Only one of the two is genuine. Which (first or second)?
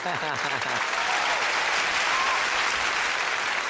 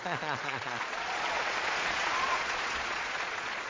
first